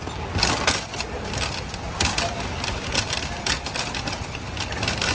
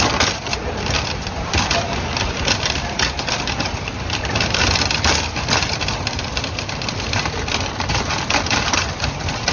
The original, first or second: first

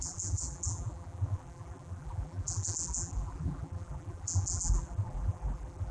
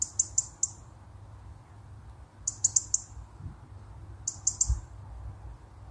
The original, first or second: second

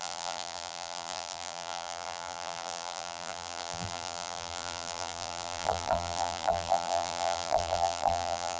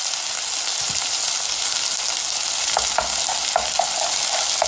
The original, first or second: second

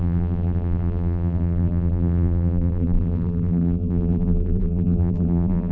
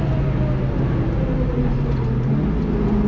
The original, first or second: second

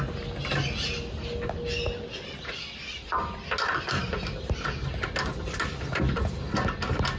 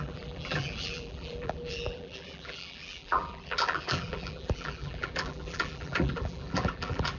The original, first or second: first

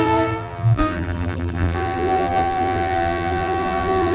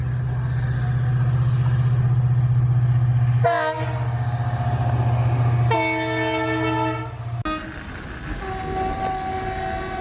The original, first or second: second